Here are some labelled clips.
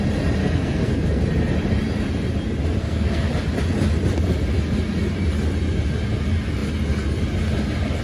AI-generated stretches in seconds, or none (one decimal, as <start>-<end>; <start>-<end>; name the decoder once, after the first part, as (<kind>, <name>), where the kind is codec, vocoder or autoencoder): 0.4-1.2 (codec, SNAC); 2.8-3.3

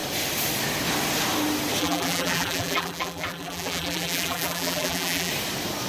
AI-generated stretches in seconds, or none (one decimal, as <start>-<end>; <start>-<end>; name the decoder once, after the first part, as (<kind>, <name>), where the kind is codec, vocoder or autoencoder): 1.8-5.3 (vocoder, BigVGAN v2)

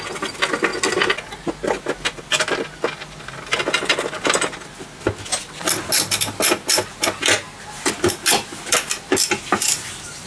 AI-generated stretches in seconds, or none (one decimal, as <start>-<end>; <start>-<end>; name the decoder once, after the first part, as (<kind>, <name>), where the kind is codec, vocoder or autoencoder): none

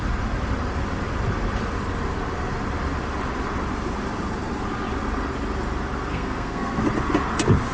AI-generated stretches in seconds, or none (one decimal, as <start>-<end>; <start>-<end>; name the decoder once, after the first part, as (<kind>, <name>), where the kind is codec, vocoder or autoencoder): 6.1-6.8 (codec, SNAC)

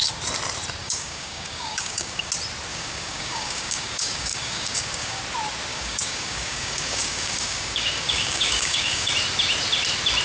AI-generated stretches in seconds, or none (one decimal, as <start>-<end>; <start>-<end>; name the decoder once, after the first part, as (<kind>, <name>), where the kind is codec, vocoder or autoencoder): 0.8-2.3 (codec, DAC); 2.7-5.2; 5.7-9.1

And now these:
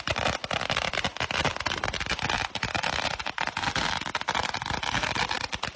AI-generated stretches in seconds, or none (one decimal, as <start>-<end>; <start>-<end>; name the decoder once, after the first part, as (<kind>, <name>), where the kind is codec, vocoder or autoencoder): none